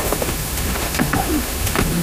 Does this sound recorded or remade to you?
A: remade